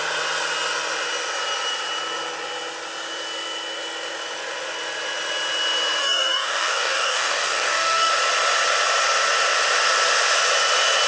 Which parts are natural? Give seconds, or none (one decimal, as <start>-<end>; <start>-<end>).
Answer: 0.0-6.0; 8.1-11.1